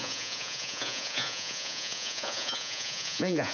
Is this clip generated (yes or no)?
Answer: yes